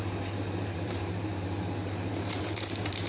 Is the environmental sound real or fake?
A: fake